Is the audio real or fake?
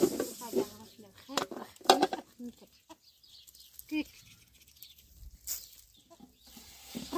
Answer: real